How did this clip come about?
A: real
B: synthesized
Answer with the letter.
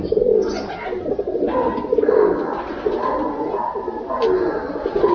A